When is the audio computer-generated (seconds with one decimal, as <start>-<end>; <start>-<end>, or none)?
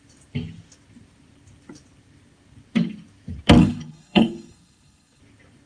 3.6-5.2